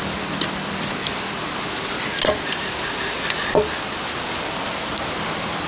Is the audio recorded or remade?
recorded